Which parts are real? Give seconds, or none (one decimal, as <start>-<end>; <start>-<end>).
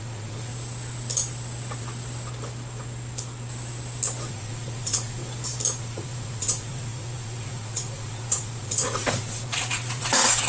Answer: 0.5-4.3; 5.2-5.8